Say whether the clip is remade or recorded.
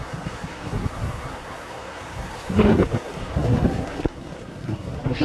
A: remade